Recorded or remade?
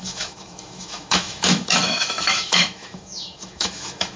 remade